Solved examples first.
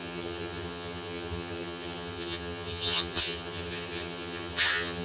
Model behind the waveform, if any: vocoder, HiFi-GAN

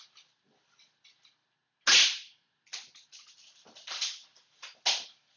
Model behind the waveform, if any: none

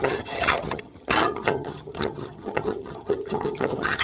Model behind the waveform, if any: vocoder, HiFi-GAN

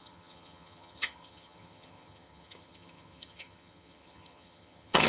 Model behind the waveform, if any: vocoder, HiFi-GAN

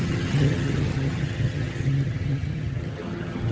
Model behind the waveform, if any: vocoder, HiFi-GAN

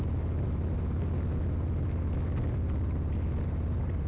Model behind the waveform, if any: none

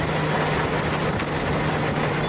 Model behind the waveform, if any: none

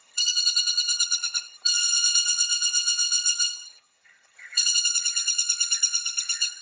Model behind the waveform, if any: vocoder, HiFi-GAN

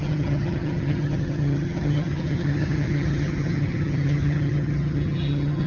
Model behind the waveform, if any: vocoder, HiFi-GAN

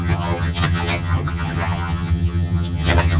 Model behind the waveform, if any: vocoder, HiFi-GAN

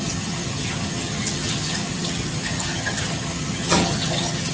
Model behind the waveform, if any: vocoder, HiFi-GAN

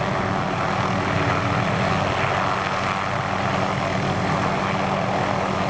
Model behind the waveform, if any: none